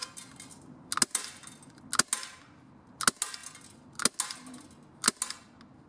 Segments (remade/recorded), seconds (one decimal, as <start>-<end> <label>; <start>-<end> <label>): 0.0-5.9 recorded